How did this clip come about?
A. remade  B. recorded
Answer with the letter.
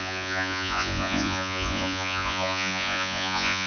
A